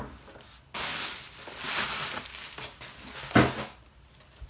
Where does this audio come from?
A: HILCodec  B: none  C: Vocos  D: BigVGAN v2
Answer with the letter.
B